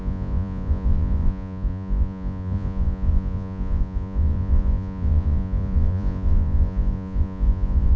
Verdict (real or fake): fake